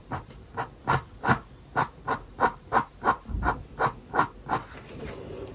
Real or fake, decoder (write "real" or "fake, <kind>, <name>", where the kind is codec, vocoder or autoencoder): real